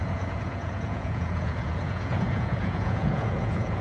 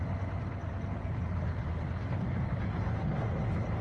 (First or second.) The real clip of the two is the second